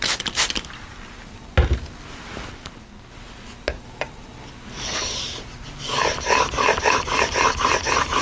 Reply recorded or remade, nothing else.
recorded